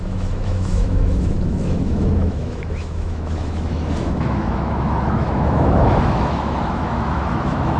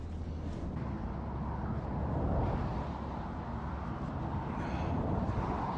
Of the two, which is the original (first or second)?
second